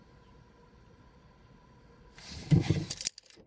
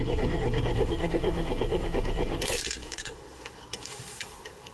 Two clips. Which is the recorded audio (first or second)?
first